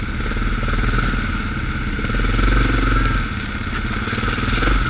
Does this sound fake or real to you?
real